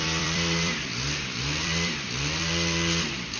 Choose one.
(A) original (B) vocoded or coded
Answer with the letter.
B